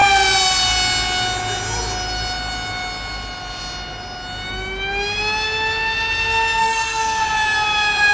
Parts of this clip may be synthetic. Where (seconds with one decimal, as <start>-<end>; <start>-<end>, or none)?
6.6-7.2